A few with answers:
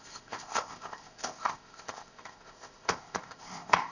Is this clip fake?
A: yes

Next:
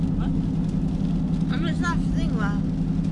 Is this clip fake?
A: no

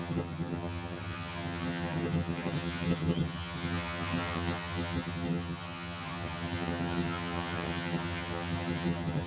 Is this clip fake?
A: yes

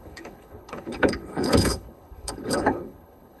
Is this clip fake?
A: yes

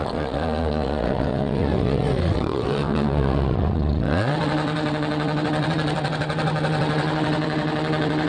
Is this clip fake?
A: yes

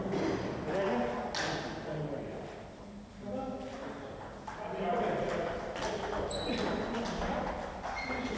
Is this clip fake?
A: no